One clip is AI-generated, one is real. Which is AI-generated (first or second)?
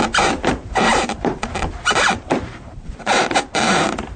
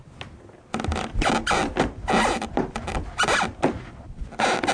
first